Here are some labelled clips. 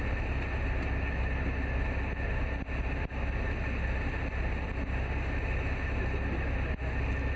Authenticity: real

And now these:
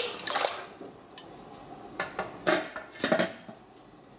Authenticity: real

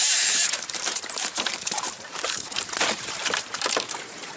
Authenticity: fake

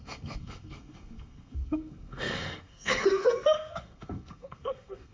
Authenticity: fake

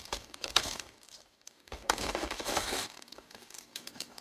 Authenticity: fake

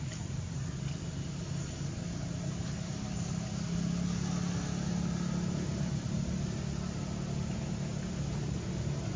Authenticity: real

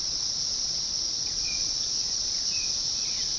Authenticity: fake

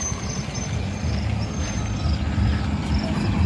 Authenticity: real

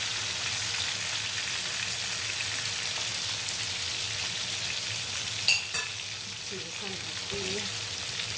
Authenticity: real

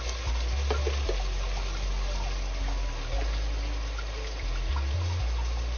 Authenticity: real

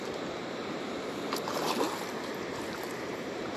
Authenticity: fake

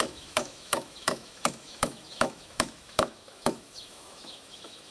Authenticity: fake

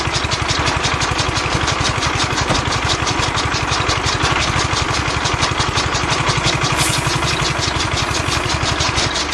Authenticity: real